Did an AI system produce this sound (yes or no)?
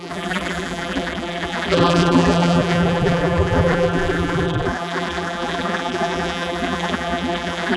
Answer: yes